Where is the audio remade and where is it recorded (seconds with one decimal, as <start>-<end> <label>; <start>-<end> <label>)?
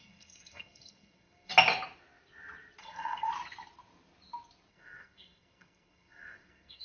0.0-1.5 remade; 1.5-2.8 recorded; 2.8-3.3 remade; 3.3-4.7 recorded; 4.7-6.8 remade